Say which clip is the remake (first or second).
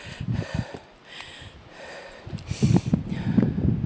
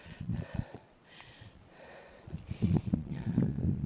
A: second